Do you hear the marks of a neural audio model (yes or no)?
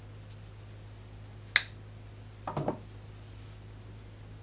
no